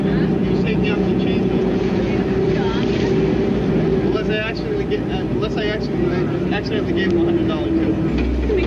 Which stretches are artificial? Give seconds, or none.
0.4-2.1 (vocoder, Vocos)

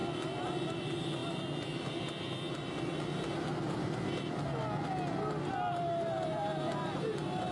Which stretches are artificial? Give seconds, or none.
none

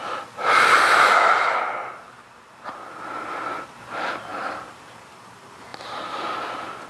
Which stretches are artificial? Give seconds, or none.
none

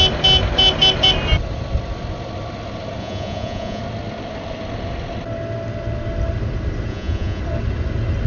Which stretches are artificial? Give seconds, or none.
3.0-3.8 (vocoder, Vocos); 6.9-7.4

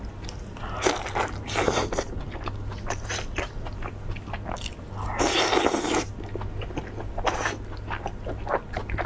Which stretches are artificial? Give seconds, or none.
none

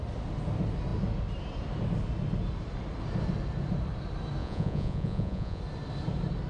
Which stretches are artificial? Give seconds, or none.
4.4-5.6 (vocoder, Vocos)

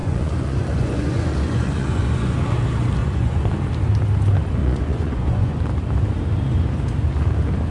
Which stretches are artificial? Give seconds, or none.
0.0-2.4 (vocoder, Vocos); 3.0-3.5; 4.6-5.6

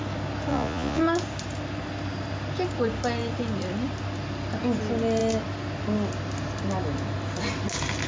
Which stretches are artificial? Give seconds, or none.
0.5-1.0 (vocoder, Vocos)